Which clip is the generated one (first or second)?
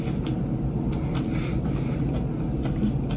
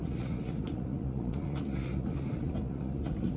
second